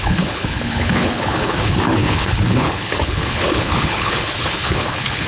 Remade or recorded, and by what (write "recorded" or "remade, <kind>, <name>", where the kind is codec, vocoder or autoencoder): remade, codec, HILCodec